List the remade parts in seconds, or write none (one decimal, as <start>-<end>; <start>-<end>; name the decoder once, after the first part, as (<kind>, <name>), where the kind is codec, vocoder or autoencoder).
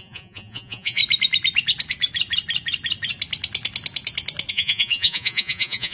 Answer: 0.0-1.0 (vocoder, Vocos); 4.5-5.9